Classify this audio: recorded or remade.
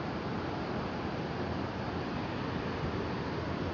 recorded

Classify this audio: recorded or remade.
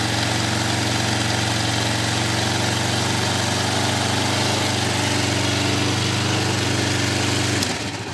recorded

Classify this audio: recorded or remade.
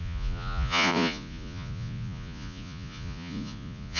remade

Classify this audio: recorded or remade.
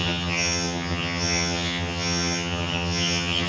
remade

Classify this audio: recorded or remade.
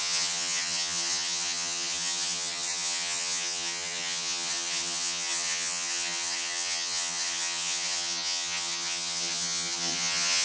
remade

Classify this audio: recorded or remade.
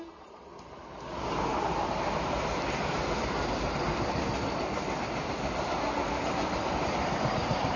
recorded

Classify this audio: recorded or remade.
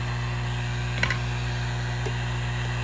recorded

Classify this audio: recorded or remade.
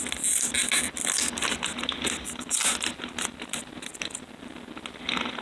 recorded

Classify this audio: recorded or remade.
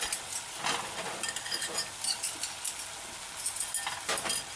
recorded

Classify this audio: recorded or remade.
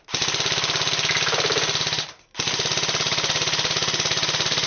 recorded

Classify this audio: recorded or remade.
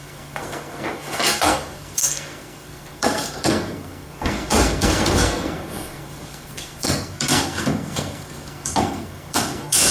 remade